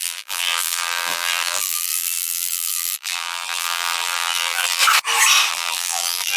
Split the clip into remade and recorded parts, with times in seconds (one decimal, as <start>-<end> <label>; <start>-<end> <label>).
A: 0.0-4.8 remade; 4.8-5.5 recorded; 5.5-6.4 remade